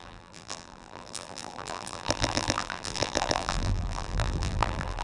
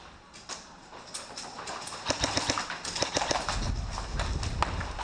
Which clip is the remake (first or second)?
first